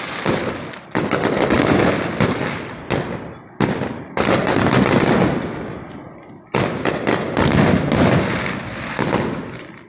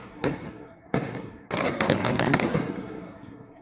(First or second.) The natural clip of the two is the first